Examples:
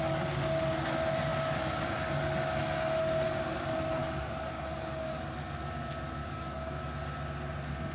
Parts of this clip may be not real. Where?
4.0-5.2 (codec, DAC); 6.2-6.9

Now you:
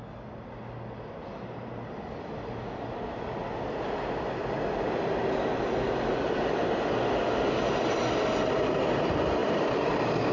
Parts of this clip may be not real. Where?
9.4-10.3 (vocoder, BigVGAN v2)

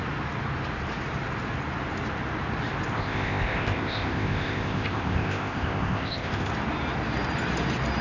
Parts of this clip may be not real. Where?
2.9-6.5 (codec, ZipCodec)

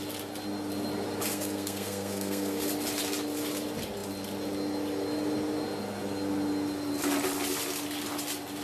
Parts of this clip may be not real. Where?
1.3-2.6 (codec, SNAC)

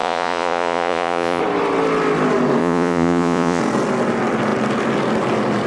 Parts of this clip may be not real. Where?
0.0-1.4 (vocoder, Vocos); 2.6-3.6

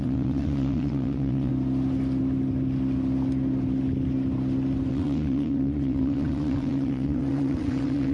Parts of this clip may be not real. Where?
0.0-1.5 (vocoder, WaveNeXt); 4.9-8.1

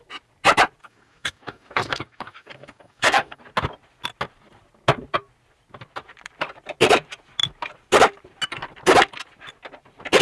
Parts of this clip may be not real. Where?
0.8-3.4 (codec, DAC)

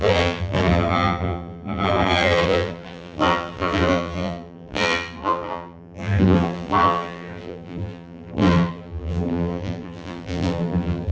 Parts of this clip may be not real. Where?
0.0-11.1 (vocoder, BigVGAN v2)